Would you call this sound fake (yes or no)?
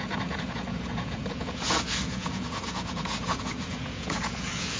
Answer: yes